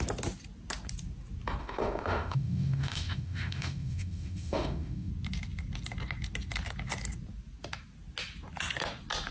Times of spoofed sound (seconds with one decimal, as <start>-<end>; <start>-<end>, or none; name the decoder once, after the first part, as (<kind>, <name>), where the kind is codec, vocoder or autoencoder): 1.6-5.1 (autoencoder, DAC-VAE)